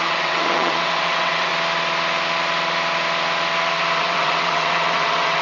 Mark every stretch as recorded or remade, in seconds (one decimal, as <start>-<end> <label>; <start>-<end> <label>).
0.0-1.5 remade; 1.5-4.0 recorded; 4.0-5.4 remade